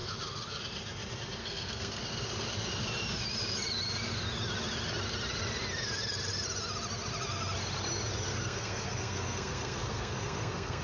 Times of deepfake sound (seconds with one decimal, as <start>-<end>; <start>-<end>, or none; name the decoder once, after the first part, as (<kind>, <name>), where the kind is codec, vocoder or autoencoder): 1.4-2.0 (codec, SNAC); 8.3-10.8